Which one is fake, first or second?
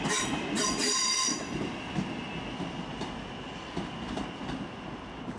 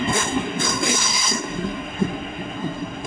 second